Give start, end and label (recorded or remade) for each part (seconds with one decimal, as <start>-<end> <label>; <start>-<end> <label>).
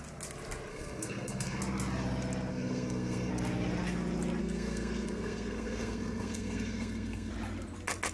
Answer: 0.0-0.7 recorded; 0.7-1.6 remade; 1.6-2.5 recorded; 2.5-3.3 remade; 3.3-4.4 recorded; 4.4-7.3 remade; 7.3-8.1 recorded